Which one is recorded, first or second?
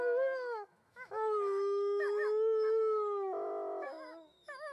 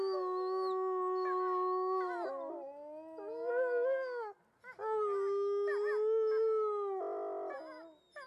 second